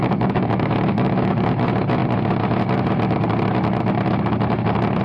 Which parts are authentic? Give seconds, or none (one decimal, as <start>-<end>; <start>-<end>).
1.5-5.0